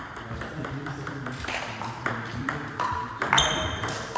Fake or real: real